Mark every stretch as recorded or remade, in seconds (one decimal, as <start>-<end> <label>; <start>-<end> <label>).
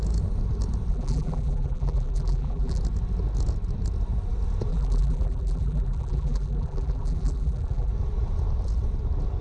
0.0-0.9 recorded; 0.9-2.8 remade; 2.8-4.7 recorded; 4.7-7.9 remade; 7.9-9.4 recorded